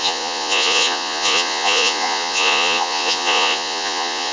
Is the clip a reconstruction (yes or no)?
yes